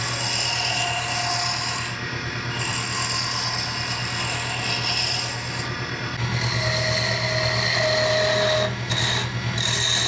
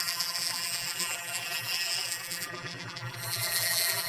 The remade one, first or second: second